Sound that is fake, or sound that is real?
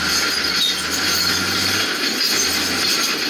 real